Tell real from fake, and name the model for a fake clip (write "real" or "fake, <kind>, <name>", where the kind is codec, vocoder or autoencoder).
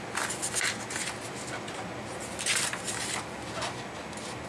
real